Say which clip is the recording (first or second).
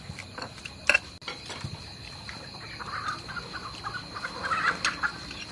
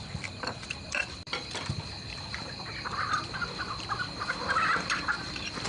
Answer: first